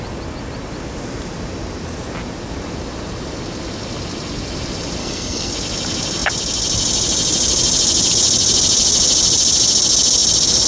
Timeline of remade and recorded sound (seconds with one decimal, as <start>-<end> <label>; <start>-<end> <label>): 0.0-5.0 recorded; 5.0-5.5 remade; 5.5-10.7 recorded